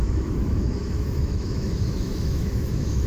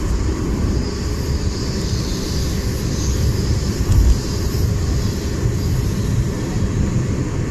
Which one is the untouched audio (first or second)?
second